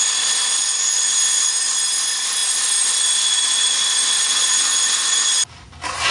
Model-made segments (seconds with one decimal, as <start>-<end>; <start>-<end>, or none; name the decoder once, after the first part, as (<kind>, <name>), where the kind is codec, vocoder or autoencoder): none